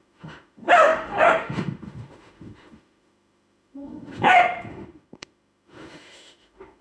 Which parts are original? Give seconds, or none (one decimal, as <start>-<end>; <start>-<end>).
none